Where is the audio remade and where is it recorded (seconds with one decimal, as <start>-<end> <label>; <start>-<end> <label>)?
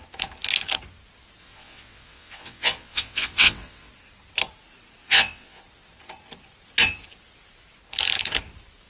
0.0-1.4 recorded; 1.4-3.9 remade; 3.9-5.0 recorded; 5.0-5.6 remade; 5.6-8.9 recorded